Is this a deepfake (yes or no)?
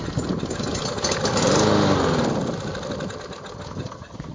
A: no